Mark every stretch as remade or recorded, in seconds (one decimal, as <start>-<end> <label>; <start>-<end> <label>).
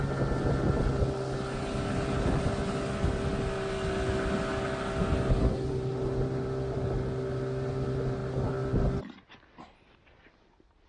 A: 0.0-10.9 recorded